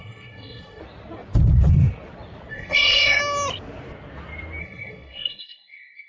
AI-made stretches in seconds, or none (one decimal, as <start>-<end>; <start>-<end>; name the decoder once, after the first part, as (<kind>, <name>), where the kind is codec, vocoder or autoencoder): 0.0-0.8 (codec, SNAC); 2.5-3.2; 4.6-6.1